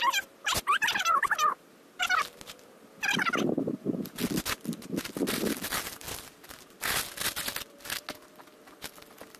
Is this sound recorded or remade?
recorded